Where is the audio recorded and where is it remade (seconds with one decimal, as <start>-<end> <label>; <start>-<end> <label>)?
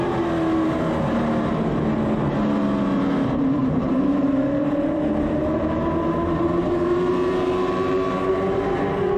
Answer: 0.0-3.6 recorded; 3.6-8.3 remade; 8.3-9.2 recorded